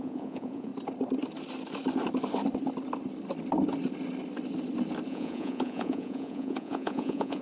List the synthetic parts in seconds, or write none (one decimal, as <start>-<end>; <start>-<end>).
0.0-0.7; 5.1-7.4